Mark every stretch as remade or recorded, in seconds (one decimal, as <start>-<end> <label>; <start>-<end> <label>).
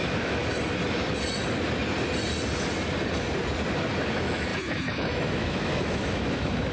0.0-0.4 remade; 0.4-4.1 recorded; 4.1-6.7 remade